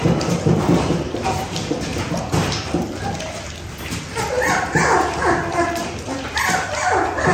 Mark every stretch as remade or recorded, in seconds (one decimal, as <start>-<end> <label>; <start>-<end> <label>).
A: 0.0-1.9 recorded; 1.9-3.0 remade; 3.0-7.3 recorded

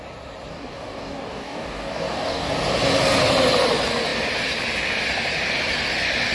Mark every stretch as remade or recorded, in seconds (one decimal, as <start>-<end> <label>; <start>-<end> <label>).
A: 0.0-0.5 recorded; 0.5-2.5 remade; 2.5-6.3 recorded

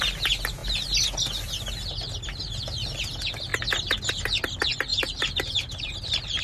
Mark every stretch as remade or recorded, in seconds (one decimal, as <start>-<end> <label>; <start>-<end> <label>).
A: 0.0-4.9 recorded; 4.9-6.4 remade

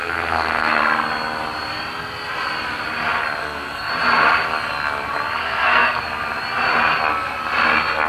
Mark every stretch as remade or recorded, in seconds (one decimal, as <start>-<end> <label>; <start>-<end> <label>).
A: 0.0-0.8 remade; 0.8-3.4 recorded; 3.4-3.9 remade; 3.9-5.4 recorded; 5.4-6.0 remade; 6.0-8.1 recorded

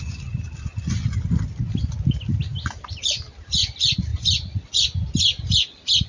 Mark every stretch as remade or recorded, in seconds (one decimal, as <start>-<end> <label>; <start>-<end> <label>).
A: 0.0-6.1 recorded

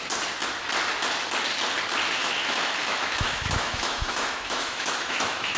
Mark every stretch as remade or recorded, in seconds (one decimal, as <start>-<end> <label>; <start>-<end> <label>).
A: 0.0-2.2 recorded; 2.2-5.6 remade

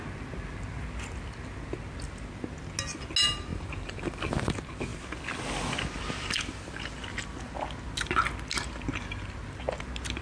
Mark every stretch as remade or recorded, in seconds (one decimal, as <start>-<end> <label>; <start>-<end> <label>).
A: 0.0-3.5 recorded; 3.5-4.1 remade; 4.1-10.2 recorded

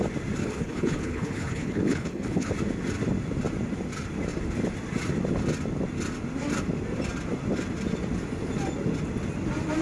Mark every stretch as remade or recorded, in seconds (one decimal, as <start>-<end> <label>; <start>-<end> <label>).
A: 0.0-0.4 recorded; 0.4-2.5 remade; 2.5-9.8 recorded